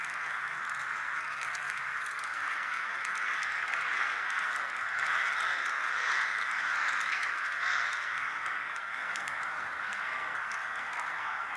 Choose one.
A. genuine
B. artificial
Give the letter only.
B